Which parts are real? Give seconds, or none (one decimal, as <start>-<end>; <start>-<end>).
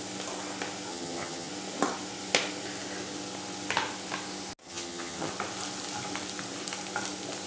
0.0-0.9; 1.5-4.6; 5.3-7.5